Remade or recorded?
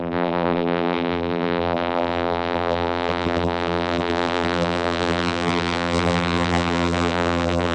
remade